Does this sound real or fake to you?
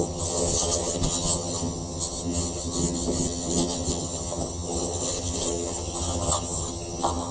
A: fake